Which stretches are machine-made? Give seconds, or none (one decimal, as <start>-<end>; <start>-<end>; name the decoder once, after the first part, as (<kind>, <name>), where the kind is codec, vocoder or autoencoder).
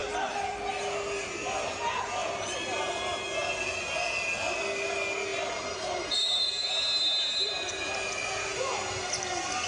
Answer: 5.3-6.7 (vocoder, BigVGAN v2)